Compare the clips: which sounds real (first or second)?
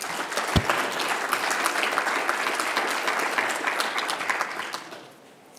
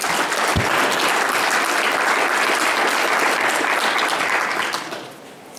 first